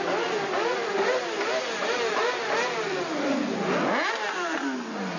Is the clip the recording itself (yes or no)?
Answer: yes